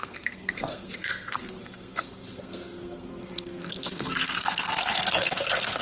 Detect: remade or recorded remade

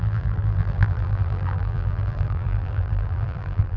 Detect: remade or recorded remade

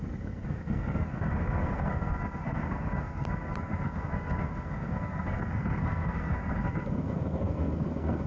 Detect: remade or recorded remade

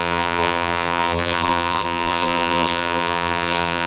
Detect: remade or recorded remade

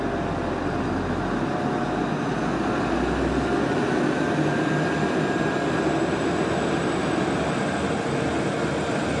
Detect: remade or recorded recorded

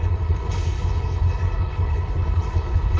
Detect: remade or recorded remade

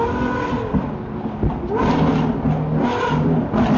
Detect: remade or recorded recorded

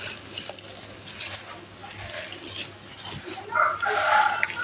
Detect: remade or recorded recorded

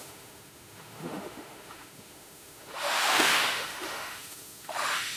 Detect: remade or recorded remade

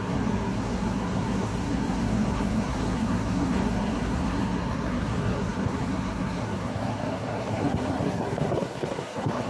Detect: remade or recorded remade